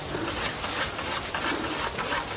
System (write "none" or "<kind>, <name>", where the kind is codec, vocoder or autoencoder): none